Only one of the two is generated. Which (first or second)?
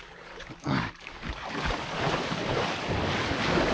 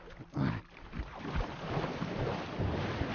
first